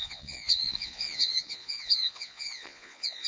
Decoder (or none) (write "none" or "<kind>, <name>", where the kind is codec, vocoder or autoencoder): vocoder, Vocos